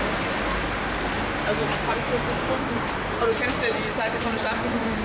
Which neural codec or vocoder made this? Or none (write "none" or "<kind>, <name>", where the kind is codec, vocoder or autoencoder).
none